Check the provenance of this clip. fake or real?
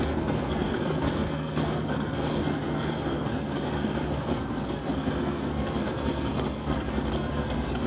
fake